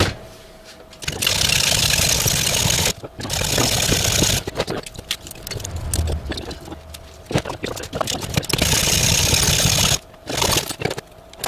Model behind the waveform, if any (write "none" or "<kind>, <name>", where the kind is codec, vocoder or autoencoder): none